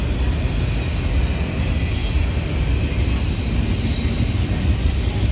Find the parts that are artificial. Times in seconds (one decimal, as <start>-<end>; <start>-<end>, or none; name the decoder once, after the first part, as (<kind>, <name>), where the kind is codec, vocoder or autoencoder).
none